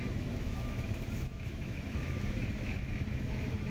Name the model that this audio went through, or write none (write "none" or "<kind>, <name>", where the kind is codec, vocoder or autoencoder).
autoencoder, DAC-VAE